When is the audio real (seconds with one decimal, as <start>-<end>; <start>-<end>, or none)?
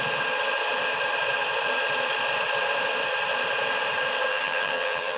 0.0-4.3